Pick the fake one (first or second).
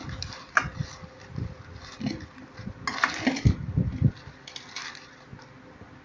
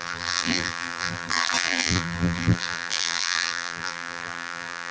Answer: second